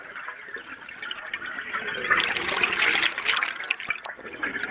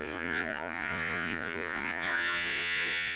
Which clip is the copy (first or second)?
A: second